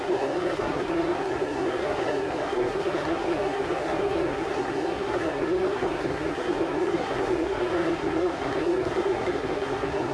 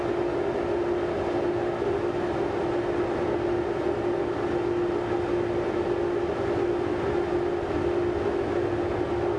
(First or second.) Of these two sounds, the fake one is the first